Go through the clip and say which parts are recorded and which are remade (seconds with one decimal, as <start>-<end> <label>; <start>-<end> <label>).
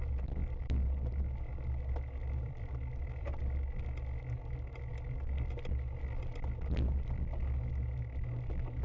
0.0-2.2 recorded; 2.2-3.4 remade; 3.4-8.8 recorded